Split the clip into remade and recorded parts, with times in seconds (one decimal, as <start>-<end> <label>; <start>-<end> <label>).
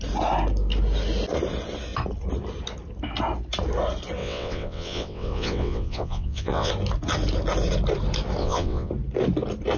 0.0-4.2 recorded; 4.2-6.7 remade; 6.7-8.4 recorded; 8.4-8.9 remade; 8.9-9.8 recorded